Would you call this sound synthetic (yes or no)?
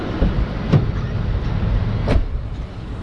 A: no